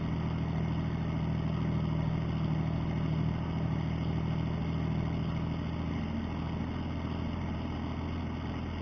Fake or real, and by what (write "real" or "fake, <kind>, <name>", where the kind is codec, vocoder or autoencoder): real